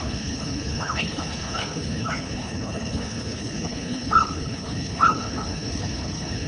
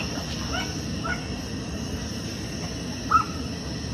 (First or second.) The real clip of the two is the second